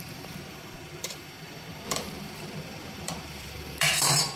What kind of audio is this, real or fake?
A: fake